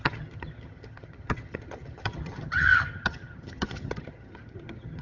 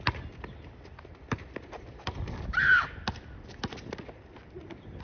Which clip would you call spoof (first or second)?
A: first